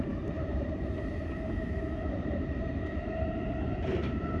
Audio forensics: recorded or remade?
remade